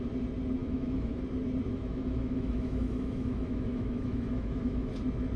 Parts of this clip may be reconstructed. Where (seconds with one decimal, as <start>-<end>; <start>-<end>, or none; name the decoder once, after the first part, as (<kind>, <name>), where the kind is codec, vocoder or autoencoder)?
0.6-1.2 (autoencoder, DAC-VAE); 1.7-4.9